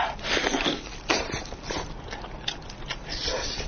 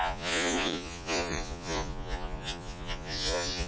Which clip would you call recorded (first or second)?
first